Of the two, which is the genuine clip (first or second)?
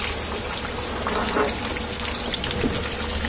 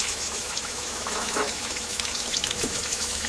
first